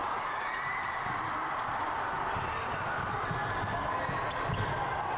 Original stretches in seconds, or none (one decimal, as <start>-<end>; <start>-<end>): 0.0-5.2